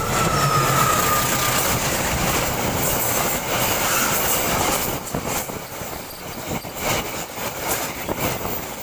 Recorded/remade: recorded